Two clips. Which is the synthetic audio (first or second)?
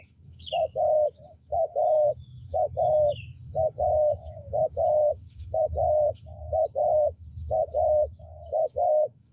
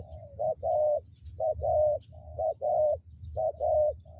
first